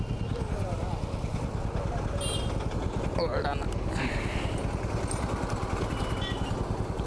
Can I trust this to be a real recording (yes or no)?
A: yes